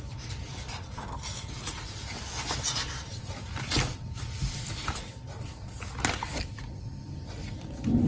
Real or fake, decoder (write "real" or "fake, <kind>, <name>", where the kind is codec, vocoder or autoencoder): real